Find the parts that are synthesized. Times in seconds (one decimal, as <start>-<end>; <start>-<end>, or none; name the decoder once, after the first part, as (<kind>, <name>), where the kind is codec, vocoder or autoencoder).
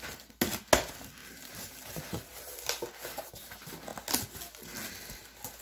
1.2-2.5 (vocoder, BigVGAN v2)